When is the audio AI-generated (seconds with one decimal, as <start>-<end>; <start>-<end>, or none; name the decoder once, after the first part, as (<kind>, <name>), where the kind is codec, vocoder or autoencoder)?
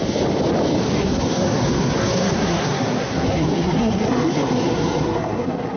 1.0-5.8 (codec, SNAC)